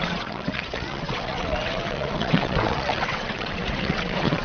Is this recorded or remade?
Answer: remade